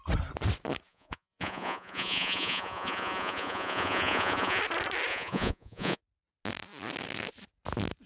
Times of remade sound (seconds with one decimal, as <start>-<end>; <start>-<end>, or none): 0.9-4.6; 5.1-6.0